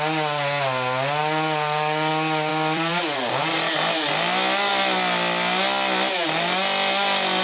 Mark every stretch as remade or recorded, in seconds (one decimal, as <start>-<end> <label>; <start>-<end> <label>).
0.0-1.2 recorded; 1.2-2.1 remade; 2.1-2.5 recorded; 2.5-4.7 remade; 4.7-7.4 recorded

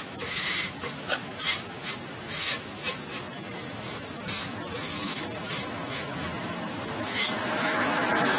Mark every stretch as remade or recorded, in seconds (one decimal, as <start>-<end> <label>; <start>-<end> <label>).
0.0-8.4 remade

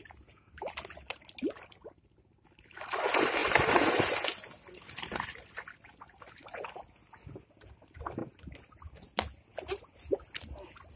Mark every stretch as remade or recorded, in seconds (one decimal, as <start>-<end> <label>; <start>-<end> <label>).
0.0-3.4 recorded; 3.4-3.9 remade; 3.9-11.0 recorded

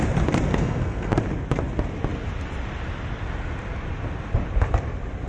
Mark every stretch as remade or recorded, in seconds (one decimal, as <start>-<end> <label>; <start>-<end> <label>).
0.0-0.5 recorded; 0.5-1.2 remade; 1.2-5.3 recorded

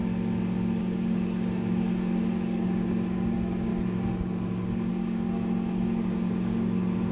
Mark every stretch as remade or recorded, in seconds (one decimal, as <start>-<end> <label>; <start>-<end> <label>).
0.0-0.8 recorded; 0.8-3.7 remade; 3.7-4.9 recorded; 4.9-7.1 remade

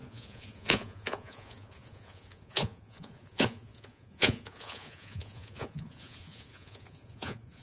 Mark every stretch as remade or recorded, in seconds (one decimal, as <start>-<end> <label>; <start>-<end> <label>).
0.0-7.6 remade

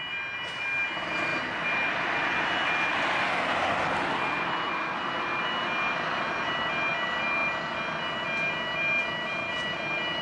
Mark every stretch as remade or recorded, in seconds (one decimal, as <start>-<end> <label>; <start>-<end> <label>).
0.0-10.2 recorded

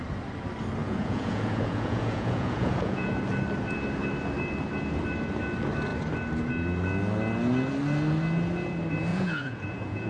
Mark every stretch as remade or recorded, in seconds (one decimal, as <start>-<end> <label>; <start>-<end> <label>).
0.0-0.8 recorded; 0.8-3.1 remade; 3.1-9.1 recorded; 9.1-10.1 remade